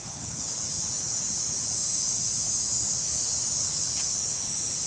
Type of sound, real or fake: fake